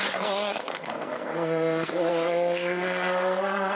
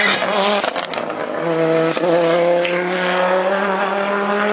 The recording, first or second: second